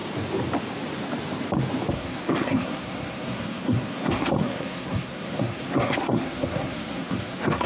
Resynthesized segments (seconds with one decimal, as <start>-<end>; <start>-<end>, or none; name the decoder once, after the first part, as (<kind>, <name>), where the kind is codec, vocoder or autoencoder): 1.9-7.7 (codec, SNAC)